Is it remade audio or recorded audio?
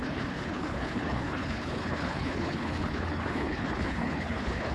remade